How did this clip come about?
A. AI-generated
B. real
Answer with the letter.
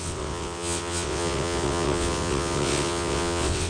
A